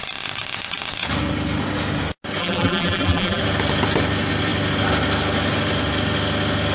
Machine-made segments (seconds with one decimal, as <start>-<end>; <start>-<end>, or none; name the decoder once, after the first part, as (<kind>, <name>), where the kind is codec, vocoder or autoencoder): 2.4-3.4 (vocoder, BigVGAN v2)